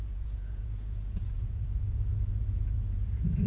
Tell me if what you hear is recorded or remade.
remade